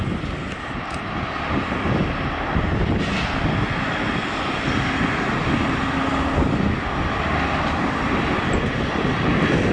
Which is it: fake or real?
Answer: real